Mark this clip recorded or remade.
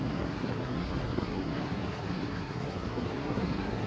remade